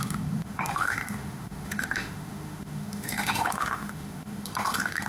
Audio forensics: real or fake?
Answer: fake